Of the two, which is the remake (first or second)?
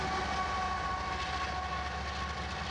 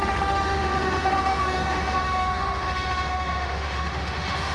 second